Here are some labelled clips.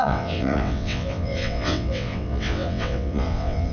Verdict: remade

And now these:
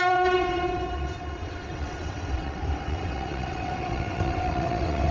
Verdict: remade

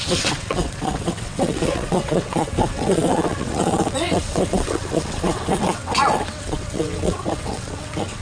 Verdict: remade